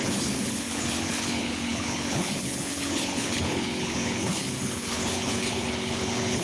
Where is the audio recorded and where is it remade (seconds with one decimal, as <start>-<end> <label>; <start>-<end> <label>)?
0.0-6.4 remade